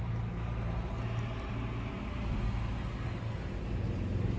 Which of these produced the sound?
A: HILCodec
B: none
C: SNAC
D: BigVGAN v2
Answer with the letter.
B